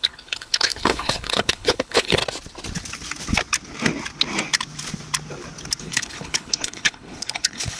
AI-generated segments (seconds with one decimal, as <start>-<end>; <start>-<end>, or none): 0.0-2.2; 5.8-7.8